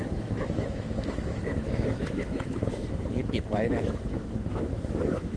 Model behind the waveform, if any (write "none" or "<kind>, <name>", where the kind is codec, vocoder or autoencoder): autoencoder, DAC-VAE